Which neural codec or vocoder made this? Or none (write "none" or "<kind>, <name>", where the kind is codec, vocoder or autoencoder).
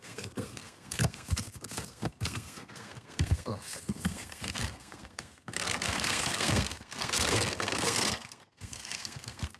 codec, SNAC